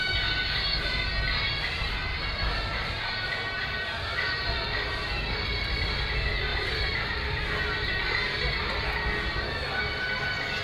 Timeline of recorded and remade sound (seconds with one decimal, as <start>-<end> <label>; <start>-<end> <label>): 0.0-6.5 recorded; 6.5-7.4 remade; 7.4-10.6 recorded